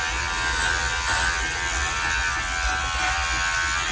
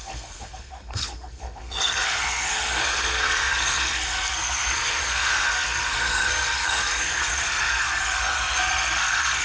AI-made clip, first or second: second